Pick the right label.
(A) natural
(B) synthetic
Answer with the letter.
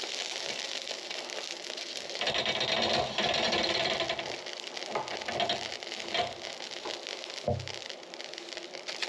A